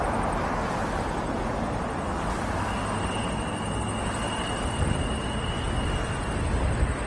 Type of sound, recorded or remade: recorded